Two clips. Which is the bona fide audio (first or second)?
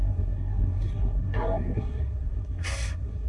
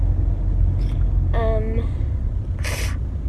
second